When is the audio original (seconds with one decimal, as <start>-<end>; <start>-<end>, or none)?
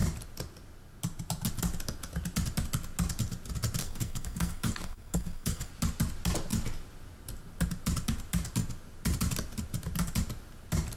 0.0-3.8; 5.7-11.0